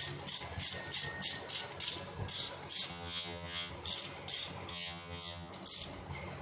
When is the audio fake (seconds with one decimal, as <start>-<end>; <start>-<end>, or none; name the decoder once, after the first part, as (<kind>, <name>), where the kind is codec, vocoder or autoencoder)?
2.9-3.7 (vocoder, HiFi-GAN); 4.7-5.5